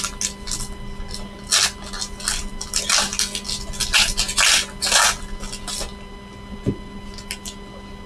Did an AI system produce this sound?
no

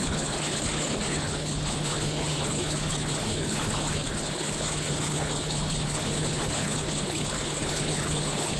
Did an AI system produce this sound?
yes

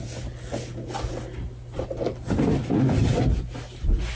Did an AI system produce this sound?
no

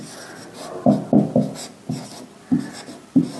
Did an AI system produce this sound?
no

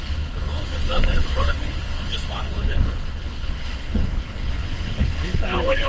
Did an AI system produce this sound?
yes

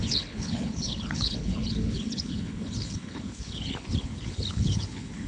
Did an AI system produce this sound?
yes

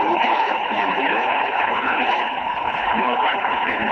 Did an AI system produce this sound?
yes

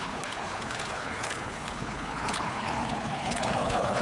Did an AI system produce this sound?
yes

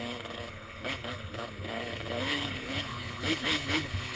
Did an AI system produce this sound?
yes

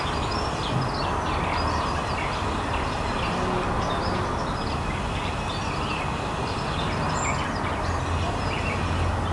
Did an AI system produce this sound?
no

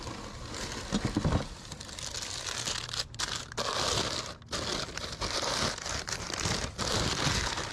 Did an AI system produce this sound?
no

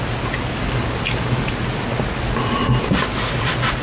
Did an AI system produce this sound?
no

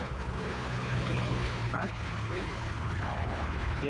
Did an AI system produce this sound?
yes